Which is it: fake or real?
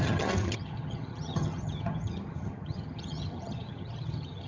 fake